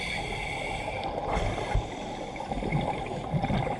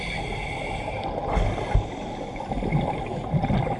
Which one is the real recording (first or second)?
second